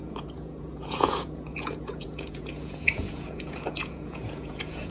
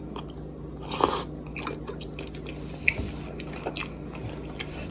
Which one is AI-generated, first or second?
first